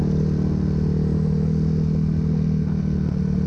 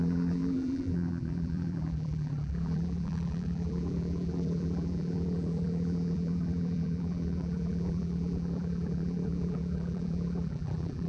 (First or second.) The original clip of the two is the first